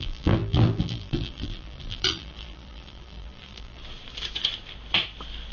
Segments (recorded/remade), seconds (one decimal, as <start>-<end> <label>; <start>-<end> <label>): 0.0-3.8 remade; 3.8-5.5 recorded